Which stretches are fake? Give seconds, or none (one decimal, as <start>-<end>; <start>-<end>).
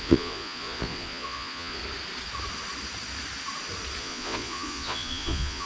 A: 0.0-1.8; 4.0-5.7